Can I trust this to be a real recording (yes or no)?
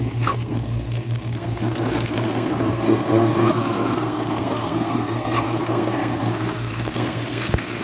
no